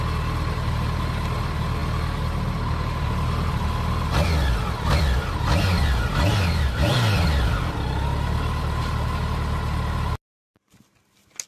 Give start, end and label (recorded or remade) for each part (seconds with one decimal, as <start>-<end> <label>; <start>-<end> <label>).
0.0-6.1 recorded; 6.1-6.9 remade; 6.9-11.5 recorded